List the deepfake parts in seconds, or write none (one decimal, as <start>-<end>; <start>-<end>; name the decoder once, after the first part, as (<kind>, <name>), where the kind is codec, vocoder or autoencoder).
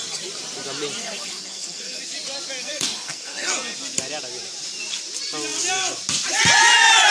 1.0-2.0 (codec, SNAC); 2.6-3.5